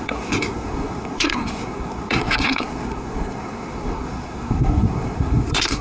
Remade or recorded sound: remade